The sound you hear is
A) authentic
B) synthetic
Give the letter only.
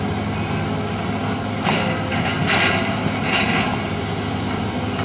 A